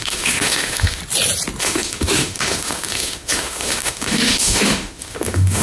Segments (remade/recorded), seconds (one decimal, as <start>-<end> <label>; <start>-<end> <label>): 0.0-1.0 remade; 1.0-1.6 recorded; 1.6-5.6 remade